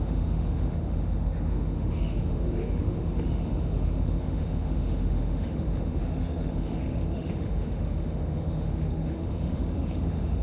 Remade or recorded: remade